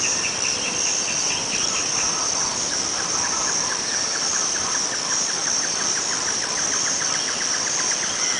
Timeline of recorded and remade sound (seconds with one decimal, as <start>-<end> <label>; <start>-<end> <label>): 0.0-8.4 recorded